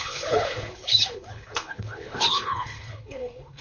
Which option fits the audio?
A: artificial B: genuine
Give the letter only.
A